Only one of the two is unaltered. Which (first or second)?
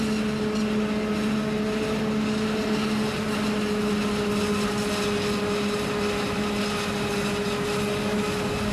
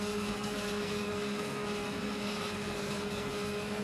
first